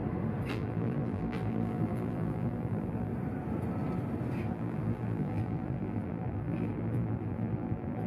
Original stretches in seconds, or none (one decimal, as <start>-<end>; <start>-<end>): 0.0-0.5; 3.1-4.5